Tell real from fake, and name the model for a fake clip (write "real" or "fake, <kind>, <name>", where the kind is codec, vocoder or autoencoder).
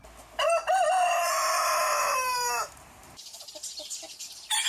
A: real